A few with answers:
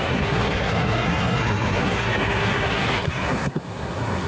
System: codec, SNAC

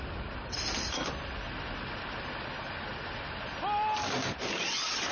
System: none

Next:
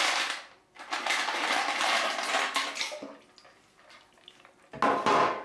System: none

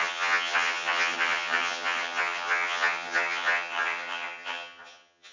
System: vocoder, HiFi-GAN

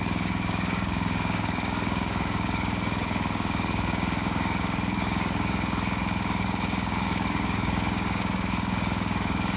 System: codec, DAC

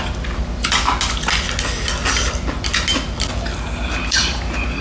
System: none